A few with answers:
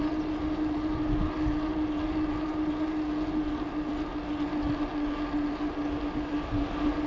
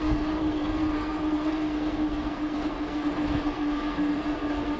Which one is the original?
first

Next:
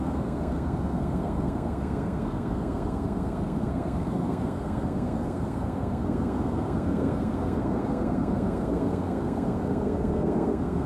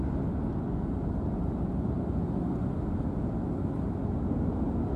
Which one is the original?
second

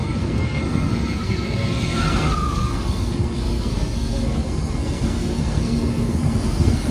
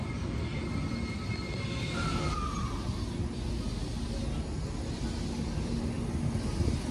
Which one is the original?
second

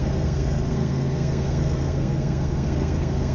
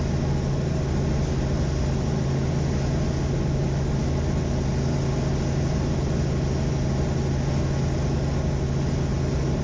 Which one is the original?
second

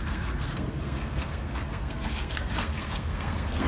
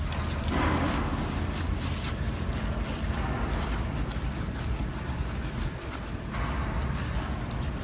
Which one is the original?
second